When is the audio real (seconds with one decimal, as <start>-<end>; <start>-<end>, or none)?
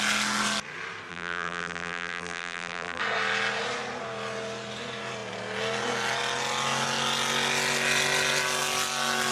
0.0-1.1; 3.0-9.3